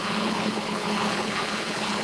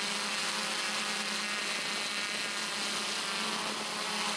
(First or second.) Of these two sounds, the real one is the second